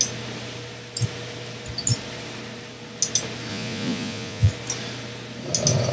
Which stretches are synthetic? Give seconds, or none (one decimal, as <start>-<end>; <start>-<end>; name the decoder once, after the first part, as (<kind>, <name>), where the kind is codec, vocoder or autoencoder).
3.5-4.5 (vocoder, Vocos)